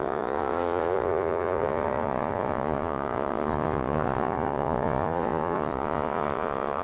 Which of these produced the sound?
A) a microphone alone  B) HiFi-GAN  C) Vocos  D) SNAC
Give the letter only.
C